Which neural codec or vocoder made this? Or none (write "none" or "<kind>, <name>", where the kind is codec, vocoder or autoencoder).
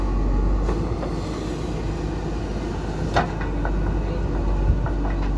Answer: none